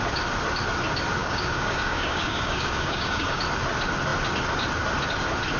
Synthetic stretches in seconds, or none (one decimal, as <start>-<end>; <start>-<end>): 1.2-3.4